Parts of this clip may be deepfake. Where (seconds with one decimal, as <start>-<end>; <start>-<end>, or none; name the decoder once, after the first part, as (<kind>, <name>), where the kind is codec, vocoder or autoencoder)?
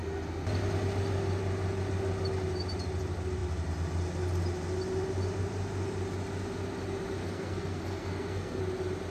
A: 7.2-8.6 (codec, SNAC)